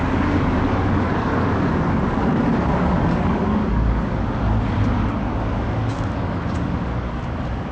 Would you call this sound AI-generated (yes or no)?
yes